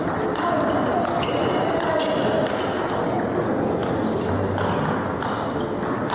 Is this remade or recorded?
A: recorded